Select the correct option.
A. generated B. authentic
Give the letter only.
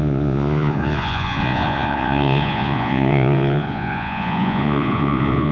A